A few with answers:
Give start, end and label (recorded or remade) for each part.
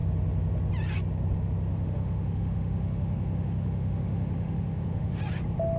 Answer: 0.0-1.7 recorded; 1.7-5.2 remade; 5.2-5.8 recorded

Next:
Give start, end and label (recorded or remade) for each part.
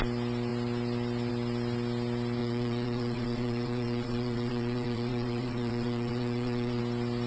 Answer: 0.0-2.4 recorded; 2.4-6.8 remade; 6.8-7.3 recorded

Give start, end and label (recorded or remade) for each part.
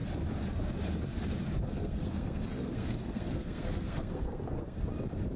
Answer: 0.0-1.6 recorded; 1.6-4.8 remade; 4.8-5.4 recorded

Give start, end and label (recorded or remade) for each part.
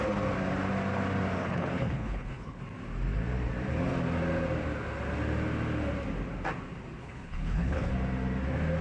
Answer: 0.0-1.4 recorded; 1.4-2.6 remade; 2.6-7.0 recorded; 7.0-7.9 remade; 7.9-8.8 recorded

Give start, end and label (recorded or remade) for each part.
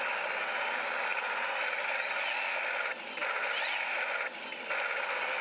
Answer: 0.0-5.4 recorded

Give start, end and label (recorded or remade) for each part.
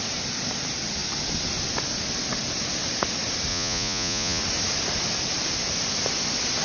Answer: 0.0-3.5 recorded; 3.5-4.4 remade; 4.4-6.6 recorded